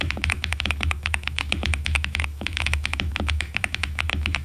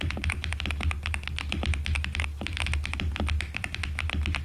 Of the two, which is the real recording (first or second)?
second